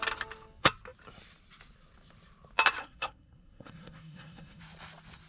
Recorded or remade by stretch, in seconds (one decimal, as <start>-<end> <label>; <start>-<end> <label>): 0.0-2.8 recorded; 2.8-4.6 remade; 4.6-5.3 recorded